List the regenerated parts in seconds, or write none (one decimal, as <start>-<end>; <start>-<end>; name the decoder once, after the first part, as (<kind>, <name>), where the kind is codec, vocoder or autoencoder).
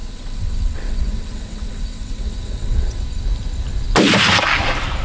0.0-3.0 (vocoder, WaveNeXt)